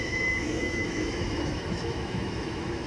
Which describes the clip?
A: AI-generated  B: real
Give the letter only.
A